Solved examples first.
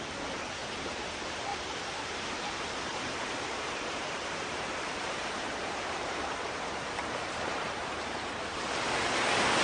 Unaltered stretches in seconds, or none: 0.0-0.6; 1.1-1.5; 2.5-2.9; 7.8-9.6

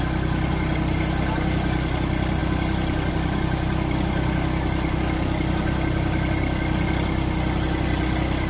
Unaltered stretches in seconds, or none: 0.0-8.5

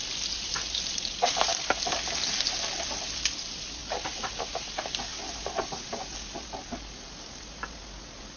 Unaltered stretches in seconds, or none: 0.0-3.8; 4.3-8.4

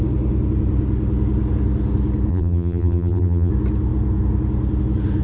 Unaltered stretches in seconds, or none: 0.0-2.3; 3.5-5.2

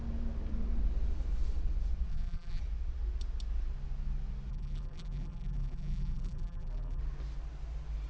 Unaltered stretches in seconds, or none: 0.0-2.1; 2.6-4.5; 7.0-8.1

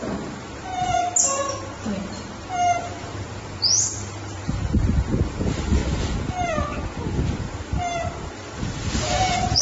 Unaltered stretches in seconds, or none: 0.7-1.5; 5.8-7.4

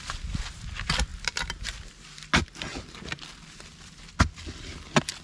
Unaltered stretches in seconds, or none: 0.0-1.1; 1.7-5.2

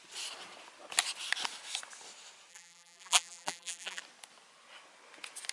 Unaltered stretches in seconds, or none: 0.0-2.5; 4.0-5.5